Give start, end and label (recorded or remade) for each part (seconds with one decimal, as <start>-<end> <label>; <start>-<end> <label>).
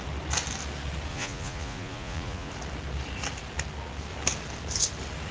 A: 0.0-1.1 recorded; 1.1-2.5 remade; 2.5-5.3 recorded